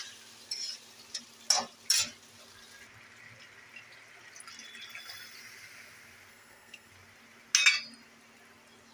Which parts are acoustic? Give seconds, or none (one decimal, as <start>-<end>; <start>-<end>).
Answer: 0.0-6.3; 6.9-8.9